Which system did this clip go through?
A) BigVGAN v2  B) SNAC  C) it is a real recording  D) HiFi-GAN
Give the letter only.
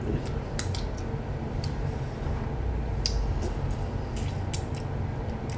C